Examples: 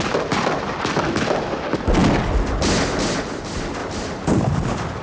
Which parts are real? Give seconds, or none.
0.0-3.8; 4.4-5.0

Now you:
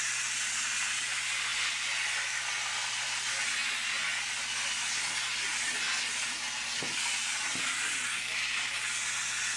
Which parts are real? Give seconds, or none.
0.0-1.5; 3.2-9.6